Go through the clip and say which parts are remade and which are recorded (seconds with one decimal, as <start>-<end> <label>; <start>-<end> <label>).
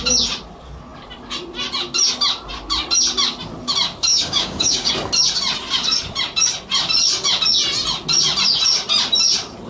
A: 0.0-4.1 recorded; 4.1-4.9 remade; 4.9-9.7 recorded